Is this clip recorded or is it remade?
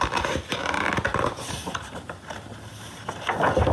recorded